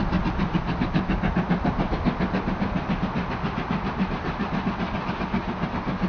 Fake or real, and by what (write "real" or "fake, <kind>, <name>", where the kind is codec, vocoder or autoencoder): real